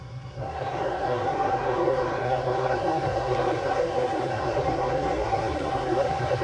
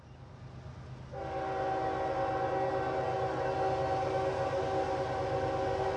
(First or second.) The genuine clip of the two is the second